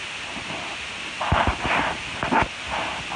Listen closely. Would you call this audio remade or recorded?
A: recorded